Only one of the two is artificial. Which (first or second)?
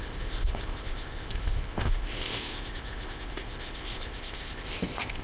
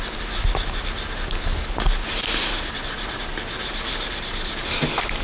first